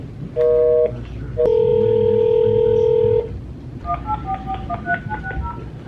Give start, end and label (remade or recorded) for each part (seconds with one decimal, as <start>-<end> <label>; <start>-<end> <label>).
0.0-5.9 recorded